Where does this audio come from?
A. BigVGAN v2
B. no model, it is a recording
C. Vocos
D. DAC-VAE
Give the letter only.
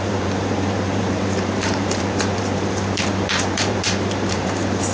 A